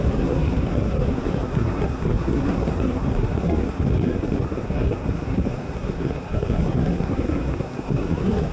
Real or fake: fake